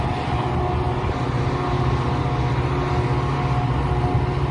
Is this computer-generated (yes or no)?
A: no